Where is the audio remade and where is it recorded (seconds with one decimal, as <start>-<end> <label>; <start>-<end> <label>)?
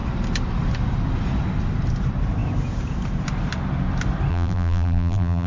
0.0-4.3 recorded; 4.3-5.5 remade